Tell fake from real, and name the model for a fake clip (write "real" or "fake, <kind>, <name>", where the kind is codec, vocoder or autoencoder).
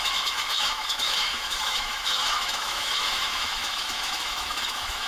fake, autoencoder, DAC-VAE